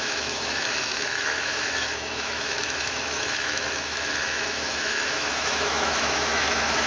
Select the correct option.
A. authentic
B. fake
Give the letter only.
B